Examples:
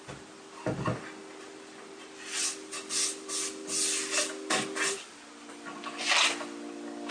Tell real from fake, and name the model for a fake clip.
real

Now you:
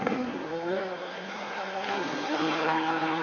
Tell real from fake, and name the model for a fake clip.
fake, codec, SNAC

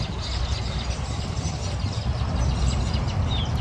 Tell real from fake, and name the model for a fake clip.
real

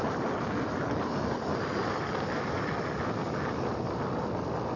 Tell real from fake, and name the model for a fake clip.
real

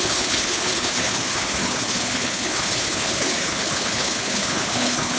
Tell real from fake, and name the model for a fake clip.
fake, codec, HILCodec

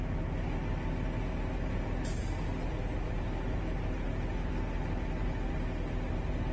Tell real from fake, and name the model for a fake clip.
real